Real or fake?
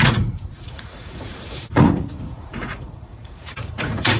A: fake